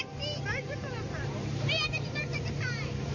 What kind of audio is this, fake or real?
fake